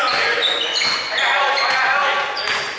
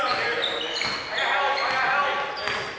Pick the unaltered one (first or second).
second